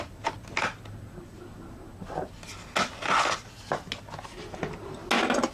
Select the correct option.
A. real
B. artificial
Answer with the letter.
A